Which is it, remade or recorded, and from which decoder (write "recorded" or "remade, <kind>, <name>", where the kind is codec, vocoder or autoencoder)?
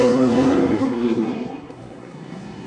remade, codec, SNAC